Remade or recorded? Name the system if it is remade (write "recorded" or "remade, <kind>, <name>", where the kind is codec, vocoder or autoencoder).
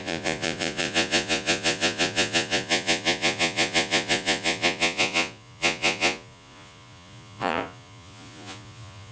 remade, vocoder, Vocos